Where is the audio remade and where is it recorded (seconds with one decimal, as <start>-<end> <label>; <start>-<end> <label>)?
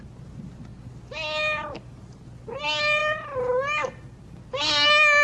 0.0-5.2 recorded